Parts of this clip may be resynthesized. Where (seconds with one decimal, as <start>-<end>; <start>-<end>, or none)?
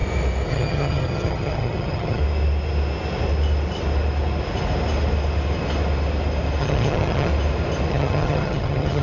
0.5-2.2; 6.6-7.3; 7.9-9.0